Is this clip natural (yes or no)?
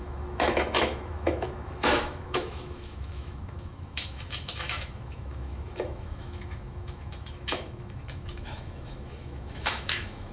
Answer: no